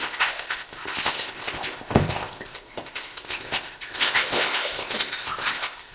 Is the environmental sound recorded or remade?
remade